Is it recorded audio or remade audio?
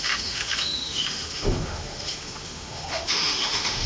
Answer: remade